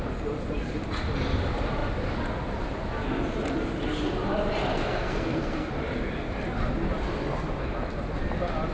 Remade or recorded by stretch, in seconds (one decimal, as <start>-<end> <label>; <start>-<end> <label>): 0.0-4.7 recorded; 4.7-5.7 remade; 5.7-8.7 recorded